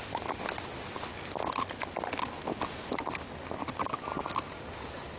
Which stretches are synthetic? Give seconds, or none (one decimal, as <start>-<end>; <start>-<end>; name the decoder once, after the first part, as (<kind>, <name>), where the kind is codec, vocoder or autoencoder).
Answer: none